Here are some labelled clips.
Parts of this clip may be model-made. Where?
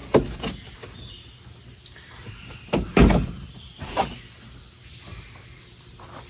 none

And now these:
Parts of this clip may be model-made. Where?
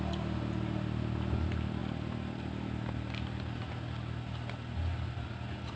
none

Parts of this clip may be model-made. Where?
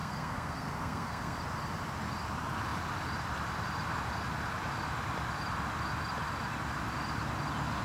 0.0-1.4 (codec, SNAC)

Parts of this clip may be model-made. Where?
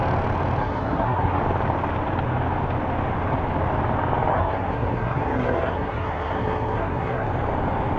0.6-1.4 (codec, SNAC); 4.3-7.3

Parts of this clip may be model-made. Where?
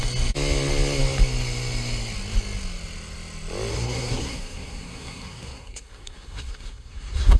3.7-7.4 (codec, SNAC)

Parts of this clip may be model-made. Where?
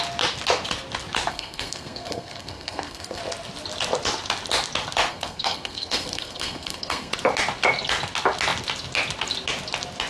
1.3-3.2 (codec, SNAC); 5.1-7.1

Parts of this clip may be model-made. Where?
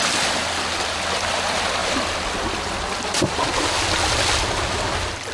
none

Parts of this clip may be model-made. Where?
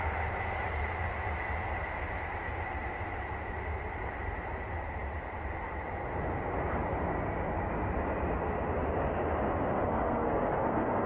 9.8-11.1 (codec, SNAC)